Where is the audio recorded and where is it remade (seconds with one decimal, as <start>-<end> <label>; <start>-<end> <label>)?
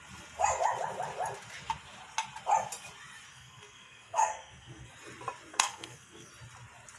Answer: 0.0-3.3 recorded; 3.3-4.9 remade; 4.9-5.5 recorded; 5.5-6.3 remade; 6.3-7.0 recorded